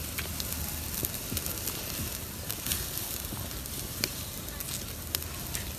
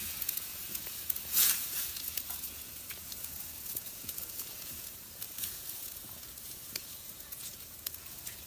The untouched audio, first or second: first